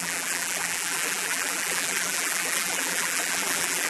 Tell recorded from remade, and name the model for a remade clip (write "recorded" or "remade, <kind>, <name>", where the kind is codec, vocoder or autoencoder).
remade, vocoder, BigVGAN v2